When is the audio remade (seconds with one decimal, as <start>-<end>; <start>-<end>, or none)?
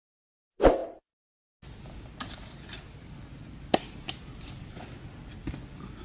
none